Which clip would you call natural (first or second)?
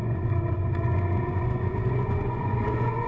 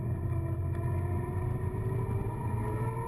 second